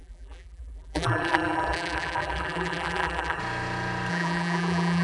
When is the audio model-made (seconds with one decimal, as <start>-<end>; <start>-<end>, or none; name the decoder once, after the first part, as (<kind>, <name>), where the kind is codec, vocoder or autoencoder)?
0.0-3.4 (vocoder, BigVGAN v2); 4.1-5.0